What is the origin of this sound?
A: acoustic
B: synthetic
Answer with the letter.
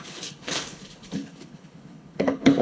B